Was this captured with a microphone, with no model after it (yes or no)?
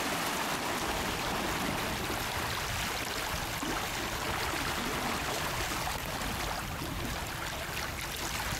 yes